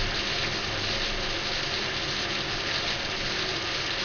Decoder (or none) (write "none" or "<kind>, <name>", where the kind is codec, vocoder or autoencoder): none